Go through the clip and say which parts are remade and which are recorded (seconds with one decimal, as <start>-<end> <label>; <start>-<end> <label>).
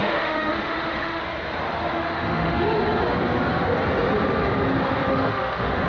0.0-1.2 remade; 1.2-2.0 recorded; 2.0-2.7 remade; 2.7-5.1 recorded; 5.1-5.9 remade